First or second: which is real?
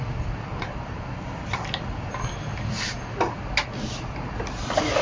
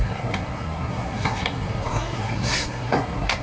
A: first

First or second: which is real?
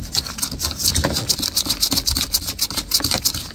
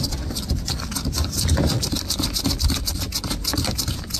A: first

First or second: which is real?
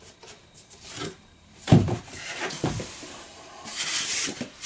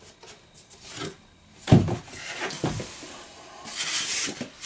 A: second